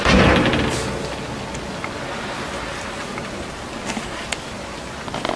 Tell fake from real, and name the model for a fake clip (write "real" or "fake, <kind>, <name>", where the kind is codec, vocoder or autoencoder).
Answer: real